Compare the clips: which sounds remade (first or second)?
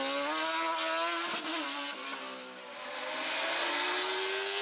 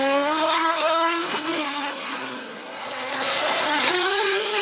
second